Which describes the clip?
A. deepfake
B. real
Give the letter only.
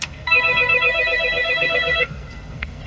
A